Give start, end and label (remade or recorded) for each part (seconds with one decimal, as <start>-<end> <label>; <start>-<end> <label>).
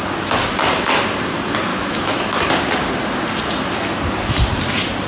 0.0-1.7 recorded; 1.7-2.2 remade; 2.2-5.1 recorded